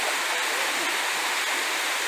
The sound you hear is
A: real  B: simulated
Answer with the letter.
A